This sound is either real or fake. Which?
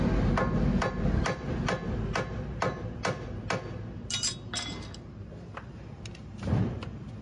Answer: real